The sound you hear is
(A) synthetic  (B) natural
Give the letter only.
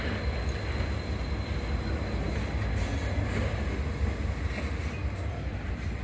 B